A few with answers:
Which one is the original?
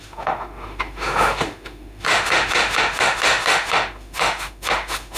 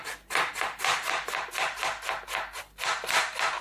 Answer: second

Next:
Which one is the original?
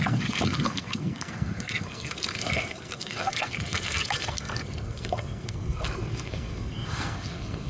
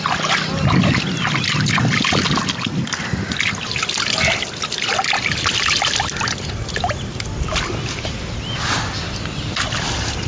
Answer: second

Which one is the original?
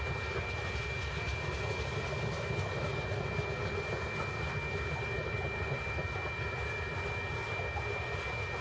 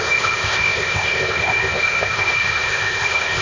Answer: first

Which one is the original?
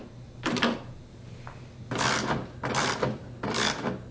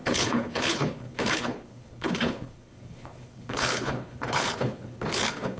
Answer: first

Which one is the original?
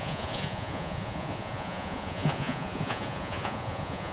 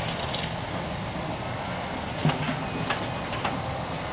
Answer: second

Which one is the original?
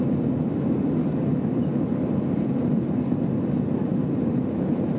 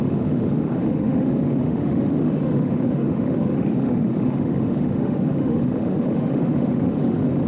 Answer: first